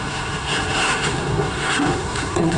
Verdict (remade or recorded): remade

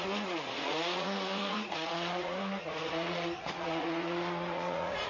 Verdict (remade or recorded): remade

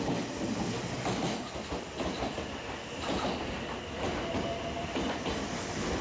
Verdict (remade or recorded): recorded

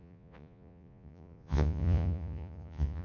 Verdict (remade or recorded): remade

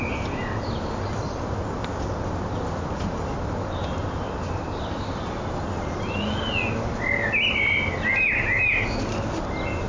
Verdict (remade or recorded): recorded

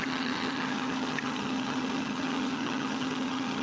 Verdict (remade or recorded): remade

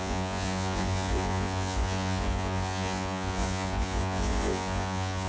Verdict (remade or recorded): remade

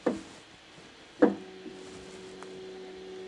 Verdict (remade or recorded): recorded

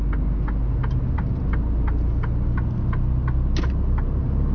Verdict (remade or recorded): recorded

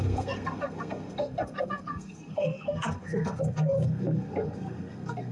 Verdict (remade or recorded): remade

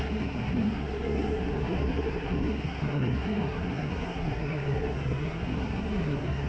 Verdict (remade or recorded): remade